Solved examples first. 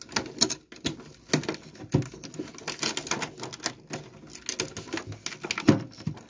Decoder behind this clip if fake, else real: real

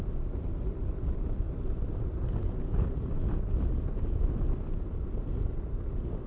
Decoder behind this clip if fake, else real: real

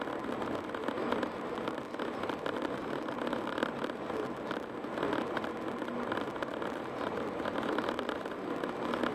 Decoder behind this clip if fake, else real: real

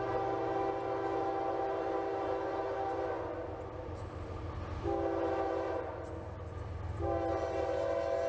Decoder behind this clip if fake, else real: real